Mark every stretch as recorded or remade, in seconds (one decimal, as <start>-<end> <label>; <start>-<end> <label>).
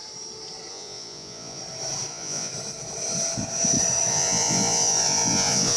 0.0-0.7 recorded; 0.7-1.6 remade; 1.6-2.1 recorded; 2.1-2.5 remade; 2.5-4.1 recorded; 4.1-5.8 remade